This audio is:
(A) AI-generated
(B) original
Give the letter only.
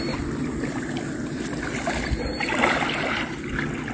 B